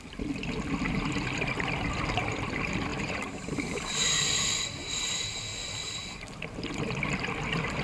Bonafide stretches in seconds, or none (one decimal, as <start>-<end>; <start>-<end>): 0.0-2.9; 4.0-4.8; 5.4-7.8